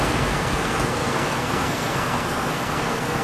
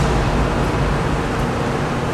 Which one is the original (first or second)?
second